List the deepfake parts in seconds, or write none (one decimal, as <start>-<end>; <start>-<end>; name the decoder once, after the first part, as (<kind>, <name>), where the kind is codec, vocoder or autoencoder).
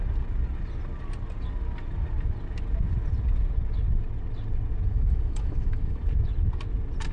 4.9-6.0 (autoencoder, DAC-VAE)